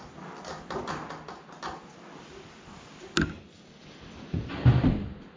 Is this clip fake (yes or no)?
no